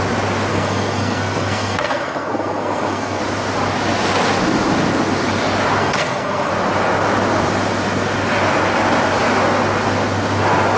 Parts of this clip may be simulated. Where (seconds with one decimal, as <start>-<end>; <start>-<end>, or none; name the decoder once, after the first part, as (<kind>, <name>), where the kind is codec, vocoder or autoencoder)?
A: 0.5-3.2 (codec, SNAC); 5.8-6.5